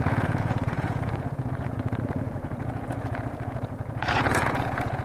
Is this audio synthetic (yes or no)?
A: yes